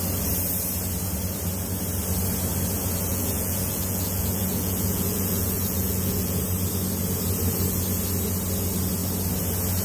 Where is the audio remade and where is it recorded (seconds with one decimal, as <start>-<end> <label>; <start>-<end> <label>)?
0.0-3.1 recorded; 3.1-6.4 remade; 6.4-9.8 recorded